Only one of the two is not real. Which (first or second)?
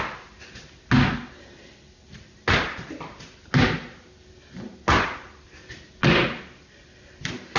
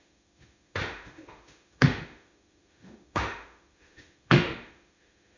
second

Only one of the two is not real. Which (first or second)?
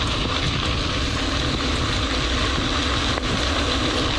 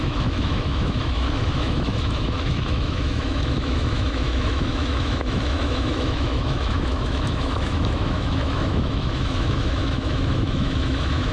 second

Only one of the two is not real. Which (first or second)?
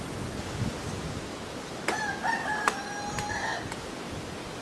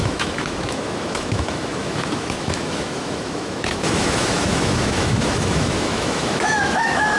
second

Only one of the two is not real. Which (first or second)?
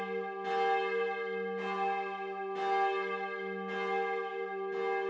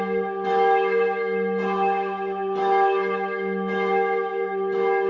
second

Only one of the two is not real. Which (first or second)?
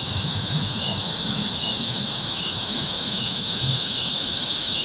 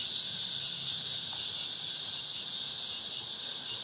first